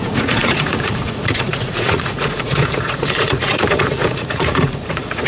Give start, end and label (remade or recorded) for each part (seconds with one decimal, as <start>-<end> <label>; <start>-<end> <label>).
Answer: 0.0-5.3 remade